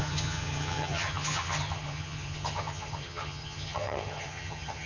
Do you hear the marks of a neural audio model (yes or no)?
yes